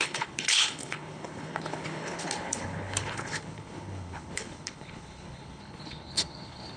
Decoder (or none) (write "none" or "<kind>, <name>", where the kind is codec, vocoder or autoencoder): codec, HILCodec